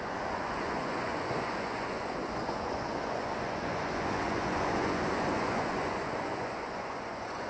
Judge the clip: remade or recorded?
remade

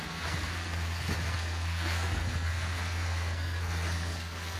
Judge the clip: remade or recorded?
remade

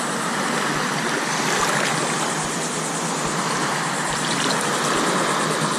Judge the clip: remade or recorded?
recorded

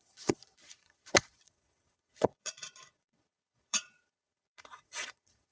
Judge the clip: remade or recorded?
remade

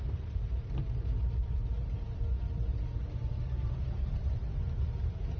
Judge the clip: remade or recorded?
remade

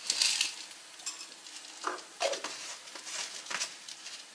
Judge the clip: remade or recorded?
recorded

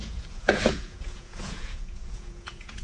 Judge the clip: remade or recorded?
remade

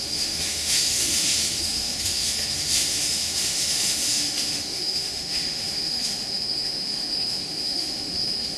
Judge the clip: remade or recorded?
remade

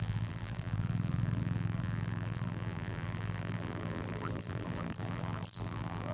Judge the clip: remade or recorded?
remade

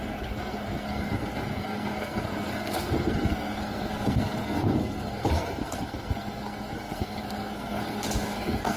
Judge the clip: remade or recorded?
remade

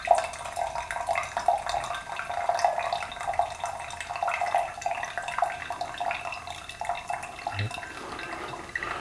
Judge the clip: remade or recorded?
recorded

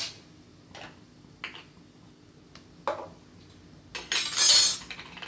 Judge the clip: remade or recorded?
recorded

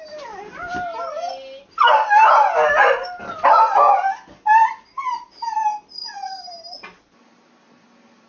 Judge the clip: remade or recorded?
recorded